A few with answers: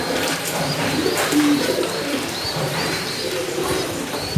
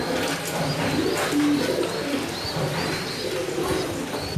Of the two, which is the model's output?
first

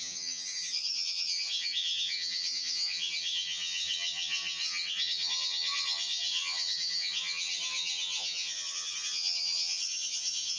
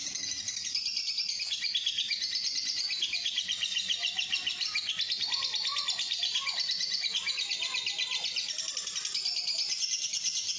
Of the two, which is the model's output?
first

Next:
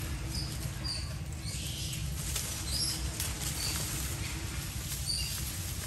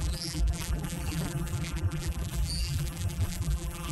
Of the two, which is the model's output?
second